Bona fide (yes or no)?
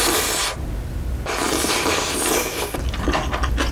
yes